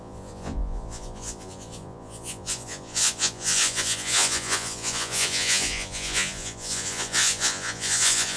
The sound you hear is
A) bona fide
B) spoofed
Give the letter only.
B